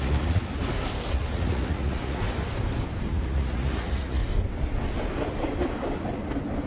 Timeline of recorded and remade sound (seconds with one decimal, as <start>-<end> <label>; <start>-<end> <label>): 0.0-0.4 remade; 0.4-1.1 recorded; 1.1-2.2 remade; 2.2-3.1 recorded; 3.1-4.2 remade; 4.2-6.7 recorded